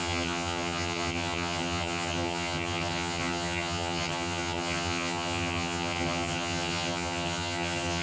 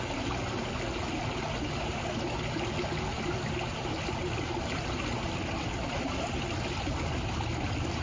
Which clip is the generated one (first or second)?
first